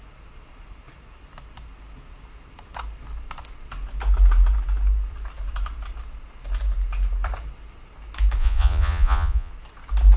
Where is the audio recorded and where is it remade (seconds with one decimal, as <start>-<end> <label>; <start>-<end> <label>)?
0.0-8.4 recorded; 8.4-9.5 remade; 9.5-10.2 recorded